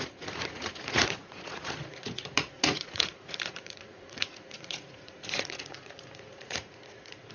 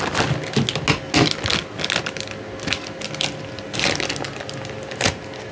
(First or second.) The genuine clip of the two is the second